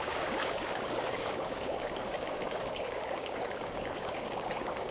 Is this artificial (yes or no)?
yes